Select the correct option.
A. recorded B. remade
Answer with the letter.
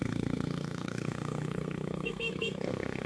B